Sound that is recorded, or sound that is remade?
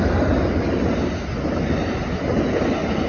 recorded